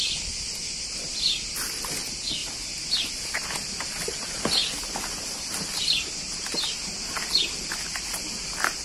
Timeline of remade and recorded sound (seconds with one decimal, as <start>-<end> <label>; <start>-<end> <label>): 0.0-2.4 remade; 2.4-3.1 recorded; 3.1-4.6 remade; 4.6-5.5 recorded; 5.5-8.8 remade